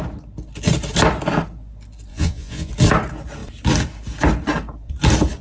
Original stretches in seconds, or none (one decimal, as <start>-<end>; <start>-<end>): 0.0-2.1; 2.7-5.4